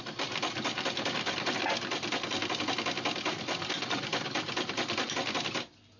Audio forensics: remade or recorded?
recorded